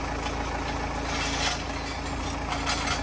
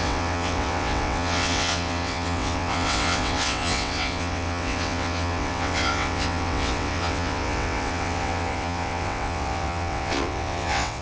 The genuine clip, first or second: first